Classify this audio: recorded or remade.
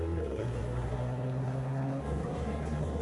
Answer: remade